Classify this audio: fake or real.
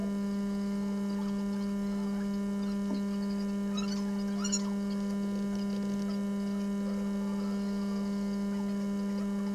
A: real